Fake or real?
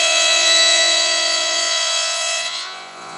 fake